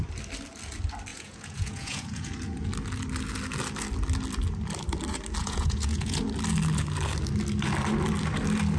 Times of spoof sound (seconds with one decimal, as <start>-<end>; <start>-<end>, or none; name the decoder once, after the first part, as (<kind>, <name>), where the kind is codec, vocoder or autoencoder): 1.1-2.7 (vocoder, Vocos); 5.4-6.2